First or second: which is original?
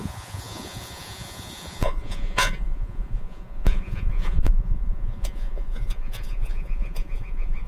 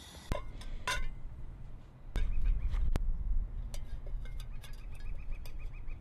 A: second